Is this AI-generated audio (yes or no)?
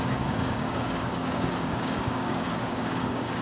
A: yes